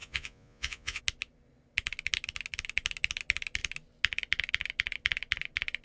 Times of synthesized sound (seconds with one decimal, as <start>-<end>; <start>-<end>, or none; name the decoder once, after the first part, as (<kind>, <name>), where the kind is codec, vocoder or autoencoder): 0.0-1.0 (vocoder, Vocos)